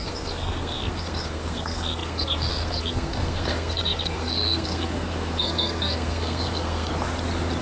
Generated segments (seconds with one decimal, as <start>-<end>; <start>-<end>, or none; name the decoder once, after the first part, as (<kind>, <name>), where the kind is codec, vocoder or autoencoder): 0.0-6.9 (codec, SNAC)